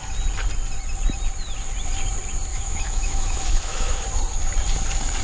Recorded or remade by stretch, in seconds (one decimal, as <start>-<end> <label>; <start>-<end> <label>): 0.0-2.5 recorded; 2.5-4.0 remade; 4.0-5.2 recorded